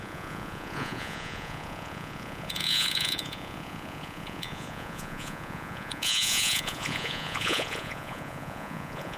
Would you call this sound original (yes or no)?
no